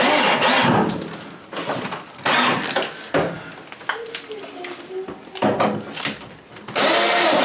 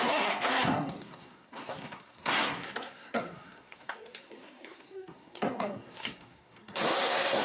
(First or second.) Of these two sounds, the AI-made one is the second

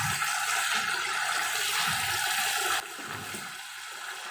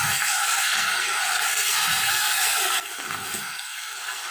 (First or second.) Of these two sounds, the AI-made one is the second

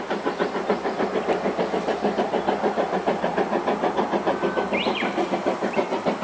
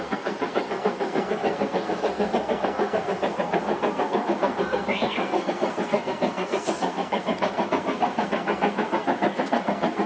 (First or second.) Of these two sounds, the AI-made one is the second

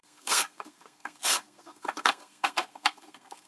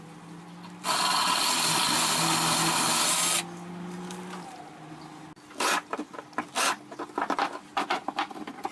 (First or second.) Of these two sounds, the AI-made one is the first